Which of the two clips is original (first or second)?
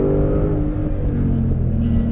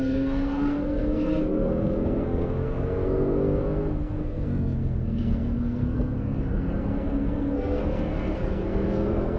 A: first